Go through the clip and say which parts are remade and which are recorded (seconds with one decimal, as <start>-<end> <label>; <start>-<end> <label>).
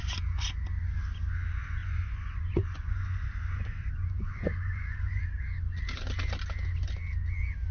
0.0-1.8 recorded; 1.8-5.2 remade; 5.2-7.7 recorded